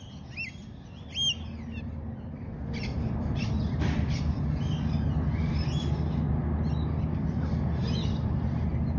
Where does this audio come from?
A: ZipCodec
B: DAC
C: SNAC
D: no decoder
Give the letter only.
D